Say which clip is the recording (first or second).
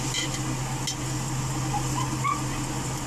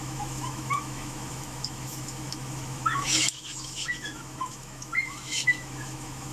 first